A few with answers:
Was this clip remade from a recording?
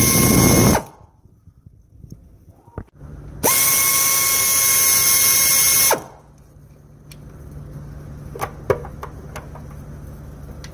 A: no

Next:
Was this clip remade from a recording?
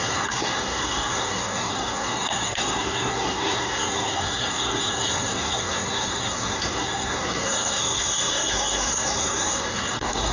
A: yes